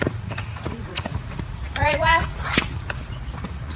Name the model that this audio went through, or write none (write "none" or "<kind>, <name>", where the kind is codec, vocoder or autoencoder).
vocoder, Vocos